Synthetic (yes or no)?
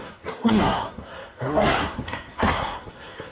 yes